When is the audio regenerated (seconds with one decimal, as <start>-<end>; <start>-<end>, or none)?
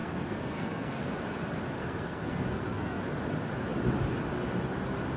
0.0-1.1; 1.8-3.0